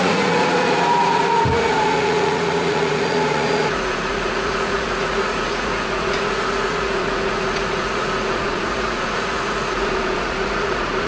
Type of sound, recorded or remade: remade